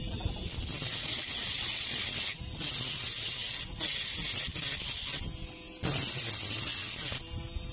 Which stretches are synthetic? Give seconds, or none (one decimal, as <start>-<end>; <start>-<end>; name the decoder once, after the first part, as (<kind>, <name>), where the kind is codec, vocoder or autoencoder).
1.0-2.0 (vocoder, Vocos)